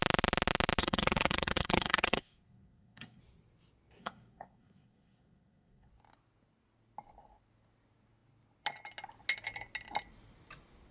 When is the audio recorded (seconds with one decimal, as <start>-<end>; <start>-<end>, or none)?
0.0-0.8; 3.2-4.0; 5.9-10.9

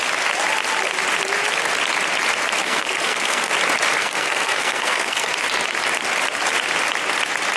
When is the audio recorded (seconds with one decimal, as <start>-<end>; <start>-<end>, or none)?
0.0-2.6; 3.5-4.0; 5.3-7.6

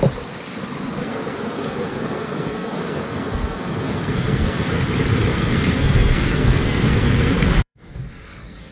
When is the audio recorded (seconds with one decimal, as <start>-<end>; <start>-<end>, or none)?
0.0-1.0; 4.8-5.3